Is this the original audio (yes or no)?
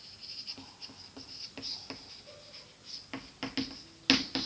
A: yes